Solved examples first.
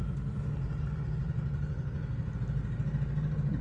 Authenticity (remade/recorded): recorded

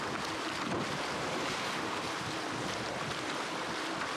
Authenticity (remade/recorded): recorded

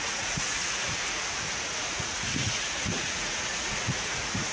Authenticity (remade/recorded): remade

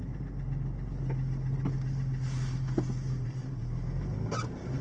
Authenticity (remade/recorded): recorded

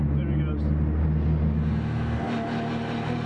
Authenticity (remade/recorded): recorded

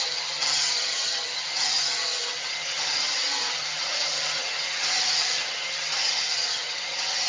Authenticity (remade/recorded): remade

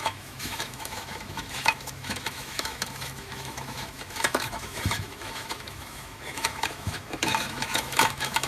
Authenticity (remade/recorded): remade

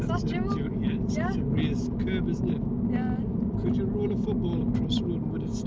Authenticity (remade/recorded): recorded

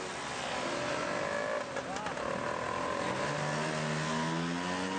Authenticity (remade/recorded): recorded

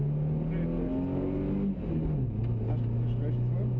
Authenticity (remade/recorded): recorded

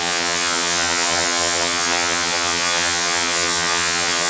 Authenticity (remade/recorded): remade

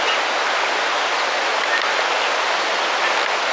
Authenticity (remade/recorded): recorded